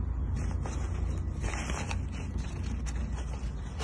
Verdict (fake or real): real